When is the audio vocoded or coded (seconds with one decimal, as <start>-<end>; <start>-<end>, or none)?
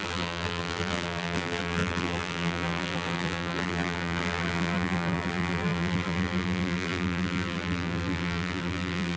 0.0-9.2